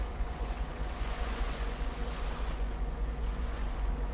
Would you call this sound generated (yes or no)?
yes